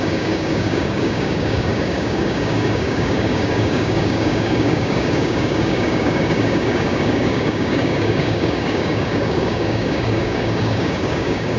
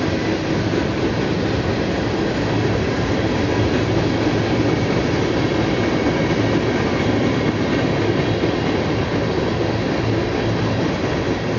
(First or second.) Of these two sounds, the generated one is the first